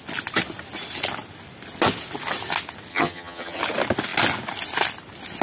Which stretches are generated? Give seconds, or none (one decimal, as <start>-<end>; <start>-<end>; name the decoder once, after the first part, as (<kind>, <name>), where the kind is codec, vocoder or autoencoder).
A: 2.9-3.6 (vocoder, HiFi-GAN)